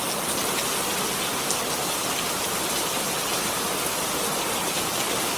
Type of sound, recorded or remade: recorded